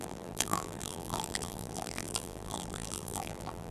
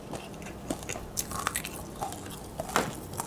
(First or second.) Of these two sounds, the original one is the second